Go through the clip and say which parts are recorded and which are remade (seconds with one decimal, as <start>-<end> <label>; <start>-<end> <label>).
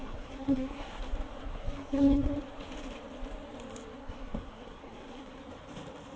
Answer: 0.0-1.0 remade; 1.0-1.4 recorded; 1.4-2.3 remade; 2.3-4.0 recorded; 4.0-5.4 remade; 5.4-6.2 recorded